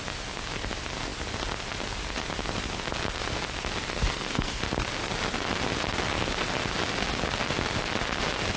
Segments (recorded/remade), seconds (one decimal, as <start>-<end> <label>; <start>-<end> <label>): 0.0-3.9 recorded; 3.9-4.6 remade; 4.6-8.6 recorded

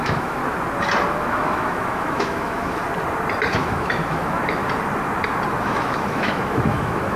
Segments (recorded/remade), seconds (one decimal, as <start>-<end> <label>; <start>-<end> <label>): 0.0-0.4 remade; 0.4-1.2 recorded; 1.2-2.8 remade; 2.8-3.5 recorded; 3.5-4.6 remade; 4.6-5.6 recorded; 5.6-7.2 remade

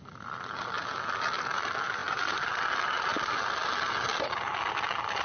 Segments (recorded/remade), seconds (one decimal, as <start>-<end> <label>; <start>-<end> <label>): 0.0-5.2 recorded

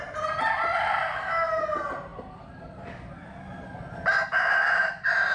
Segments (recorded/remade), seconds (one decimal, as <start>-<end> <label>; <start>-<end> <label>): 0.0-5.3 recorded

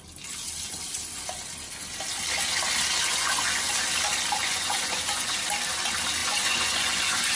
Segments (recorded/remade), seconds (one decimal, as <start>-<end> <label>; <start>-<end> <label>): 0.0-3.1 recorded; 3.1-3.7 remade; 3.7-4.4 recorded; 4.4-5.4 remade; 5.4-6.2 recorded; 6.2-7.4 remade

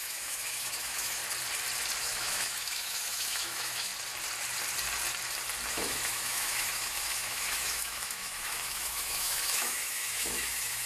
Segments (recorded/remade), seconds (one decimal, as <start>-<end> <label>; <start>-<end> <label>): 0.0-1.2 remade; 1.2-2.0 recorded; 2.0-3.9 remade; 3.9-5.7 recorded; 5.7-10.9 remade